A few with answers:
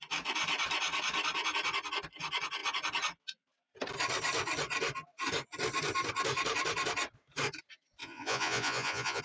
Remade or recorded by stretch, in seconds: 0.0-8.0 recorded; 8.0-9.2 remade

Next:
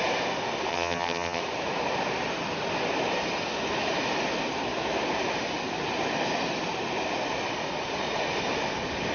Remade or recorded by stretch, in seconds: 0.0-0.7 recorded; 0.7-1.4 remade; 1.4-9.1 recorded

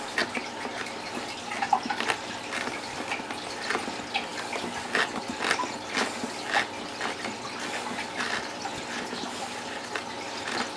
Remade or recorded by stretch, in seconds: 0.0-10.8 recorded